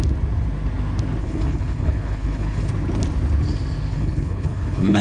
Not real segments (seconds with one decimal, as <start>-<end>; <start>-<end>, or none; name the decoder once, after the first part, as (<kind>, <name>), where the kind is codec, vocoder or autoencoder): 1.2-2.7 (codec, HILCodec); 3.9-5.0